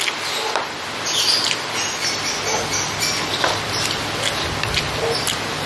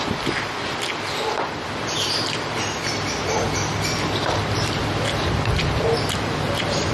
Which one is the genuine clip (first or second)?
first